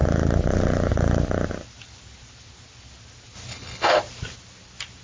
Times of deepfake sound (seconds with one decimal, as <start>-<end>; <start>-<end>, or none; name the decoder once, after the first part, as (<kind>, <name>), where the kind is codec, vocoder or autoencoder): 3.5-4.0 (codec, HILCodec)